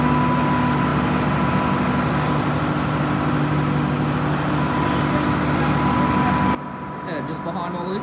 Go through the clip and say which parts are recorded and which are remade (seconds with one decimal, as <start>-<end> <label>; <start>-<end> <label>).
0.0-8.0 recorded